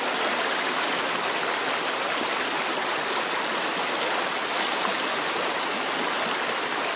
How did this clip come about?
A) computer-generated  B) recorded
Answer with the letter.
B